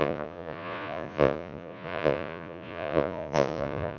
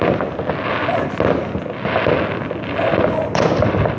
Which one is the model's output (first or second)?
first